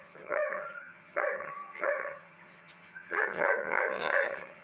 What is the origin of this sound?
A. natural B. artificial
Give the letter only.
B